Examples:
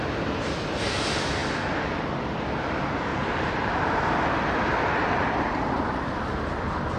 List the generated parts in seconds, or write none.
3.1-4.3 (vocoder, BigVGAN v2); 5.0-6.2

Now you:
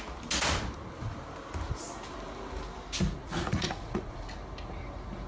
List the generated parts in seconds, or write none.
3.2-4.3 (vocoder, Vocos)

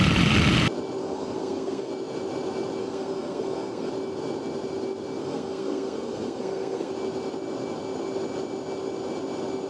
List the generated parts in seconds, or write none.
1.0-1.9 (codec, SNAC); 2.8-3.9; 5.2-6.9

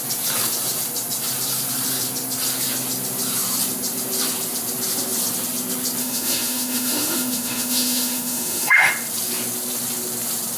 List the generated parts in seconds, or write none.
6.0-8.9 (autoencoder, DAC-VAE)

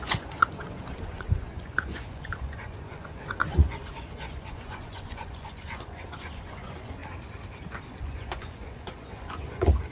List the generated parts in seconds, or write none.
0.0-7.0 (vocoder, Vocos); 7.8-9.9

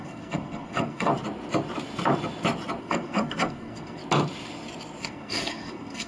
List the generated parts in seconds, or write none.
0.0-1.1 (codec, SNAC); 2.8-4.0; 5.0-6.1

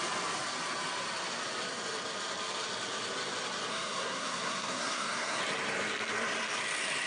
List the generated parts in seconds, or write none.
3.7-5.4 (codec, SNAC)